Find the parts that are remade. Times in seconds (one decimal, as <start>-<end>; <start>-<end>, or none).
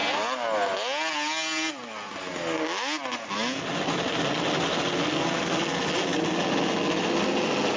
none